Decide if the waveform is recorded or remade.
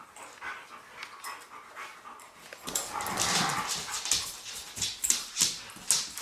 recorded